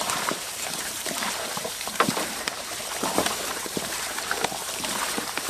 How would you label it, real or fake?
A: fake